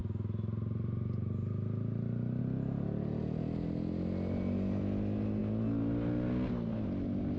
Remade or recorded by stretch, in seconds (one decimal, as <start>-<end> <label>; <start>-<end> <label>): 0.0-7.4 recorded